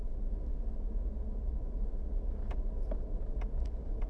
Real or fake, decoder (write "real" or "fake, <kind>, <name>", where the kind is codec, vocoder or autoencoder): real